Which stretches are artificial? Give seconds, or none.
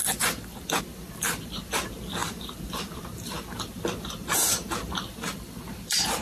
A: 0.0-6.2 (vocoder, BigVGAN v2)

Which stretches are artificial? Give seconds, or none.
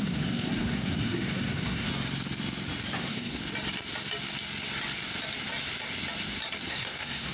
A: 0.0-1.9 (codec, SNAC); 3.0-3.4; 6.7-7.3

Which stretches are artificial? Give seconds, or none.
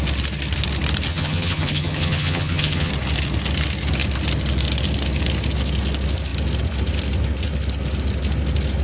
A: 1.1-2.9 (vocoder, HiFi-GAN)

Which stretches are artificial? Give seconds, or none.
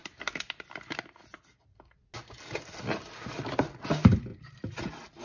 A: 4.3-5.2 (vocoder, BigVGAN v2)